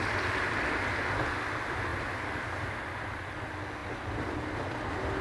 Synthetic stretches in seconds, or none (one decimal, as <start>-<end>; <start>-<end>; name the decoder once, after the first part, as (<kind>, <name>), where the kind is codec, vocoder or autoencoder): none